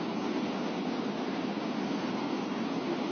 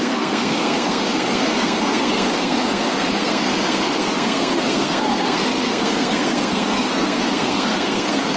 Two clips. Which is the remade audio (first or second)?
second